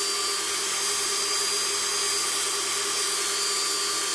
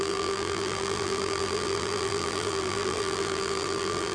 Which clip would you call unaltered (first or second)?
first